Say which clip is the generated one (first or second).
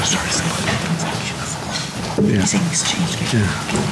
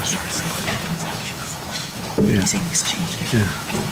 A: second